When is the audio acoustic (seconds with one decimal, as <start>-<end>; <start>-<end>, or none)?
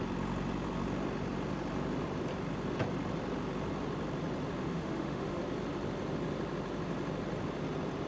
0.0-4.6; 5.4-8.1